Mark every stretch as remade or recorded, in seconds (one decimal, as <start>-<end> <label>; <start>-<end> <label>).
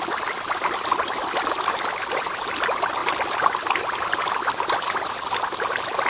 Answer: 0.0-6.1 recorded